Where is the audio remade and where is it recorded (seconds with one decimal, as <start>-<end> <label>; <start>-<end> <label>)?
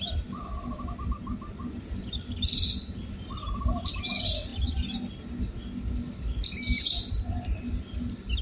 0.0-8.4 recorded